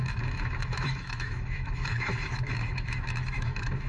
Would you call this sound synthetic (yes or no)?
yes